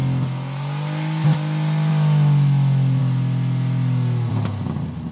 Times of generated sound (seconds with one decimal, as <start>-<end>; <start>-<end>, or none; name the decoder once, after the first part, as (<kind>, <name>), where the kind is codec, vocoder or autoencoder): none